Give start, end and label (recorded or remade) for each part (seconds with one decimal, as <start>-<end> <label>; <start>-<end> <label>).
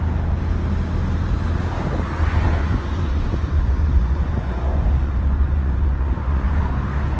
0.0-2.3 recorded; 2.3-6.6 remade; 6.6-7.2 recorded